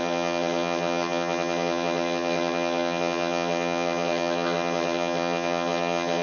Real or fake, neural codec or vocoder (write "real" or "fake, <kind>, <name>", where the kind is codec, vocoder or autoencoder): fake, vocoder, HiFi-GAN